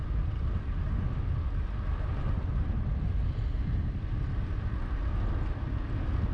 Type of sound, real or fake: real